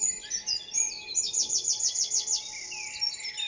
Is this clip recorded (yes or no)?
yes